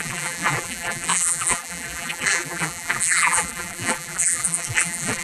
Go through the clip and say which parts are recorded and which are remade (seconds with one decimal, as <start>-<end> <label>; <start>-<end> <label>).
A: 0.0-5.2 remade